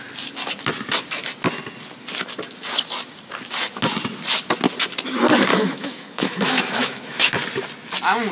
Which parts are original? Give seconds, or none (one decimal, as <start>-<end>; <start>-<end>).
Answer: 0.0-5.5; 7.3-8.3